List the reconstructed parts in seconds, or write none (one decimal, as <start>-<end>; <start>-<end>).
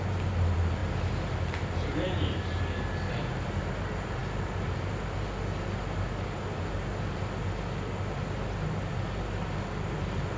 none